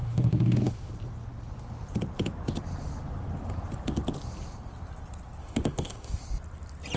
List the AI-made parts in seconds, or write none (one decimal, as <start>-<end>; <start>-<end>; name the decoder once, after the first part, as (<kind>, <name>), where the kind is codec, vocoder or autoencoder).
0.0-0.9 (autoencoder, DAC-VAE); 5.4-6.2